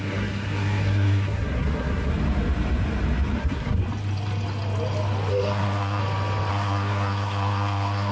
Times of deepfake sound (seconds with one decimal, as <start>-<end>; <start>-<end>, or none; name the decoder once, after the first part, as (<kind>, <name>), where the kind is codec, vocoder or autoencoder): 0.0-2.1 (codec, SNAC); 3.4-3.8; 5.3-6.0; 6.5-8.1

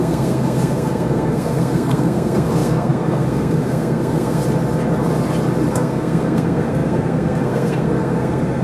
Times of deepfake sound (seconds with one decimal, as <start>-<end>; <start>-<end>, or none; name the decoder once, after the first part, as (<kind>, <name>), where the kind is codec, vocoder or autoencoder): 0.0-4.4 (codec, SNAC); 5.7-8.6

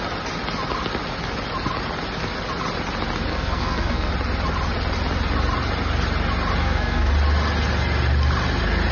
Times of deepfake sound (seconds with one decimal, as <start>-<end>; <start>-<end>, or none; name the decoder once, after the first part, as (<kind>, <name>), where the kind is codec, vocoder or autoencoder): 3.3-4.1 (codec, SNAC); 6.6-7.1

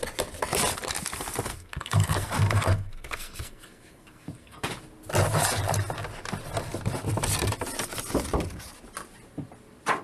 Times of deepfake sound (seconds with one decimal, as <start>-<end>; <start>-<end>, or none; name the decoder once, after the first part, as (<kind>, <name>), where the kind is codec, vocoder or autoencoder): 1.5-4.7 (codec, SNAC)